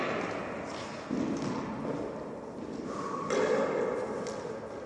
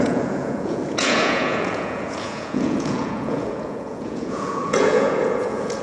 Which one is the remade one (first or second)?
second